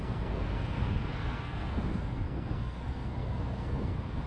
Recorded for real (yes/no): no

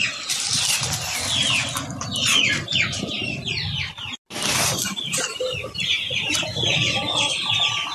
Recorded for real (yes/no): yes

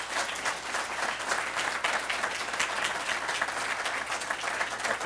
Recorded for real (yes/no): yes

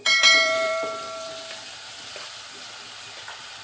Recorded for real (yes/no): no